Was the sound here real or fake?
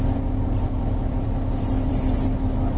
fake